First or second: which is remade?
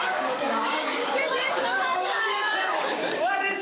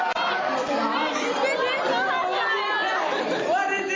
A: first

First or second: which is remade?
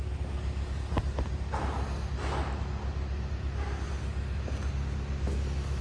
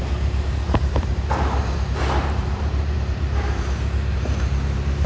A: second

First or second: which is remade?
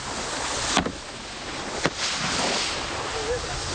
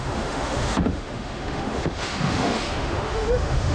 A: second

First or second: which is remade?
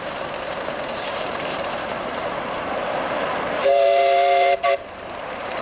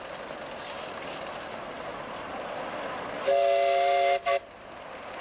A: first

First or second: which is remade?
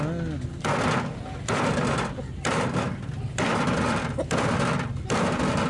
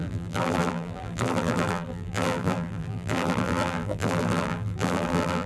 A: second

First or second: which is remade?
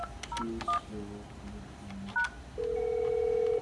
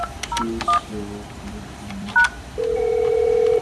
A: second